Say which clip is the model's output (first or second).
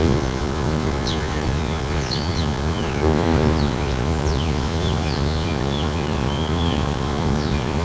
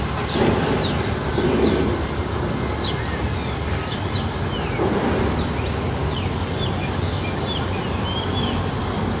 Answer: first